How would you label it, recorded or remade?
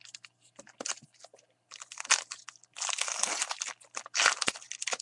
recorded